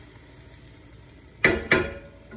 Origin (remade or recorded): recorded